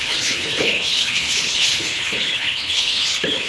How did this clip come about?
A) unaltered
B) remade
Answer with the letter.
B